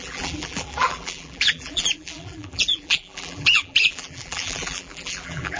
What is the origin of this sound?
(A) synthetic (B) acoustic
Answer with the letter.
A